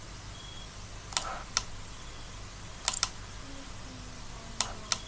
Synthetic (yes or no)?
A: no